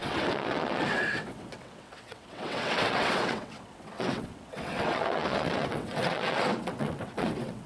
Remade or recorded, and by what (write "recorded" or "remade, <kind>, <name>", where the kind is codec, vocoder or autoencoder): remade, vocoder, WaveNeXt